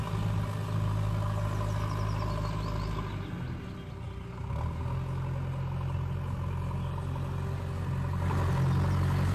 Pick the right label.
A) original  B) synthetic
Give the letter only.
A